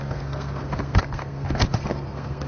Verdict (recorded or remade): remade